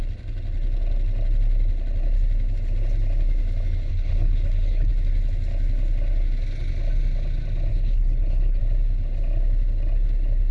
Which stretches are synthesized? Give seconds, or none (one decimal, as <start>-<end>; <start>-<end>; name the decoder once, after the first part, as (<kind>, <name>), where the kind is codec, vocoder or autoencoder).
3.9-4.9 (codec, HILCodec); 7.7-8.6